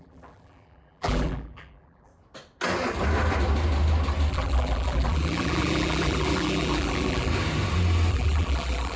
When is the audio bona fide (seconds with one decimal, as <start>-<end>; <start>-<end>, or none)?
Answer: 2.1-4.3; 7.3-8.1